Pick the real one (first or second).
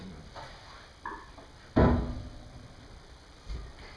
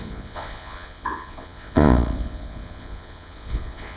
first